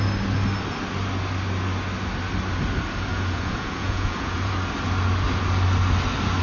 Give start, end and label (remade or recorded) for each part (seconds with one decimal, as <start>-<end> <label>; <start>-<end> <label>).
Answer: 0.0-3.1 recorded; 3.1-4.5 remade; 4.5-6.4 recorded